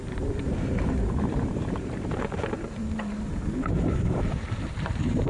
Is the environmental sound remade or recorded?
remade